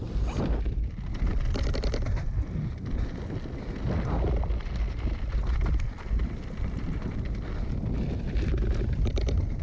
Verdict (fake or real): real